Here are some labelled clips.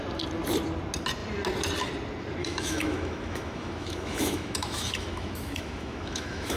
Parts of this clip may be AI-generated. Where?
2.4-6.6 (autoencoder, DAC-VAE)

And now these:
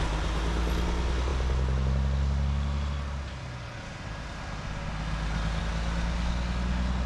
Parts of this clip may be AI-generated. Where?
none

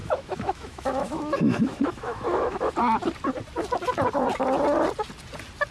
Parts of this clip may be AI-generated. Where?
0.0-2.7 (autoencoder, DAC-VAE)